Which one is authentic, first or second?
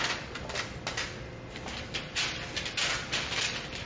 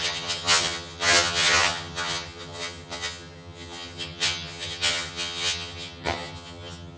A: first